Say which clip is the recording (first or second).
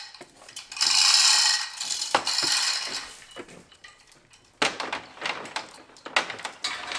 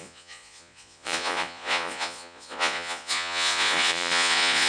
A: first